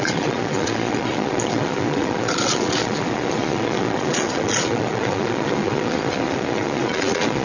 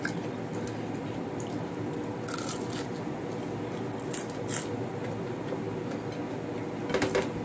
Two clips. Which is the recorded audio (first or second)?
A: second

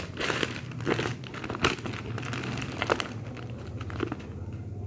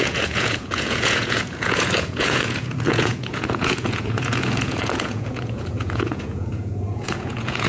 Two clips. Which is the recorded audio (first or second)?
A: first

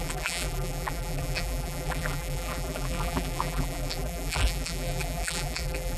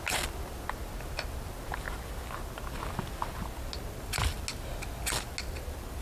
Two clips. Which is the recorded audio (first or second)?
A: second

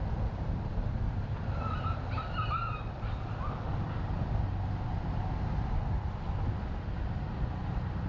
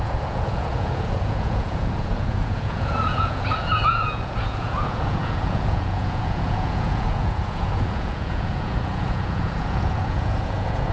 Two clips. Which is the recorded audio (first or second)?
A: first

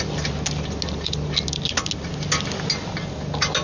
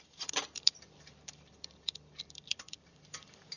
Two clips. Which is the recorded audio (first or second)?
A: first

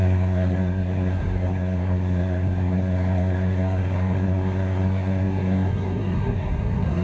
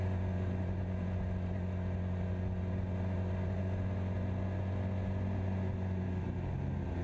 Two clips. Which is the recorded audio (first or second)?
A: second